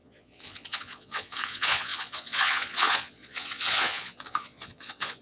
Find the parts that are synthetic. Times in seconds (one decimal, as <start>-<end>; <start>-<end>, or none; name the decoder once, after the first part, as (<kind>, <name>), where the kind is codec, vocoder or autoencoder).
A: 0.0-5.2 (vocoder, Vocos)